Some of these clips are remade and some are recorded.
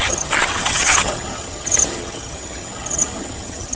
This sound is remade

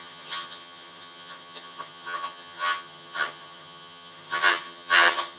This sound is remade